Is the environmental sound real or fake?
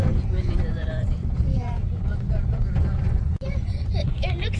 fake